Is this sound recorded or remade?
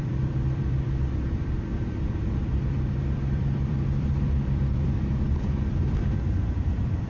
remade